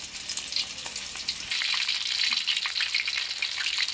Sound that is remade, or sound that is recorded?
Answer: recorded